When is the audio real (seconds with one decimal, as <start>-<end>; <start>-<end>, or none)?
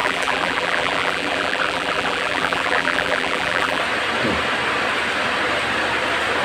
3.8-6.4